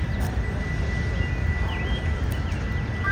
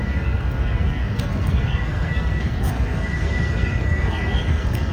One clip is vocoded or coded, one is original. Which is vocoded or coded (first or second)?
second